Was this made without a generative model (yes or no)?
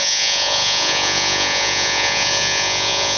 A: no